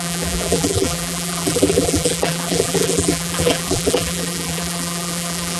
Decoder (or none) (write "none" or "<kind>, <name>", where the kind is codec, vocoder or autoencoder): vocoder, BigVGAN v2